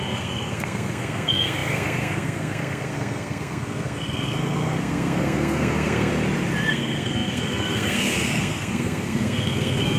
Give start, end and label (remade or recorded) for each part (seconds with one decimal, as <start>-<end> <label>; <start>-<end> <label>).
0.0-6.1 remade; 6.1-6.7 recorded; 6.7-10.0 remade